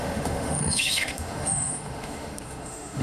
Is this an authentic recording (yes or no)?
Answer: no